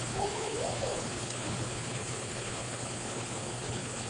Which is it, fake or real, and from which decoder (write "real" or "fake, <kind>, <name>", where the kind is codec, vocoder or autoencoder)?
fake, codec, HILCodec